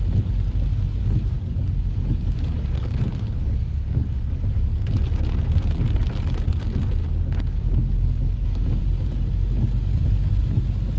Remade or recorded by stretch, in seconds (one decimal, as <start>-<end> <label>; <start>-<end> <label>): 0.0-1.0 recorded; 1.0-5.0 remade; 5.0-7.0 recorded; 7.0-8.8 remade; 8.8-11.0 recorded